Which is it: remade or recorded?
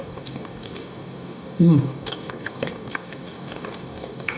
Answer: remade